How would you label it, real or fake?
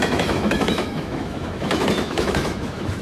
fake